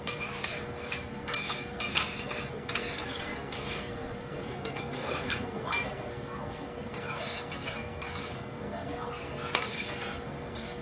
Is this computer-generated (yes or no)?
yes